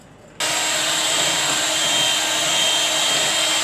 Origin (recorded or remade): recorded